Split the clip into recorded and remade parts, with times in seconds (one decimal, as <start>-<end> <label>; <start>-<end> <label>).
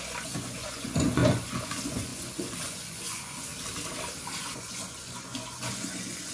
0.0-3.5 remade; 3.5-4.4 recorded; 4.4-6.3 remade